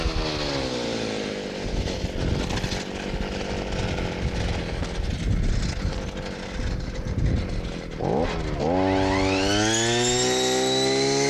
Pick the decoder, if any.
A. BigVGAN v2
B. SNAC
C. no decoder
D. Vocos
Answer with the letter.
C